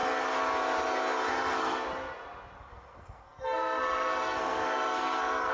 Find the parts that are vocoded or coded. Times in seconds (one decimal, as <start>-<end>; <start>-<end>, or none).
1.3-1.8; 2.6-5.5